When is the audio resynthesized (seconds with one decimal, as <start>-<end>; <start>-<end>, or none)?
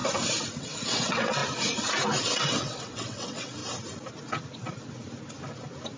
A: 0.6-1.4; 2.2-3.6